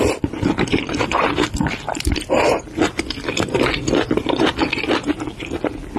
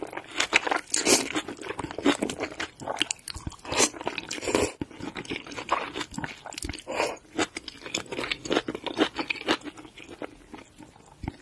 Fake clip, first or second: first